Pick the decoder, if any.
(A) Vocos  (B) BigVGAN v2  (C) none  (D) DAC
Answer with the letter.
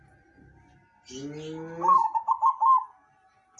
C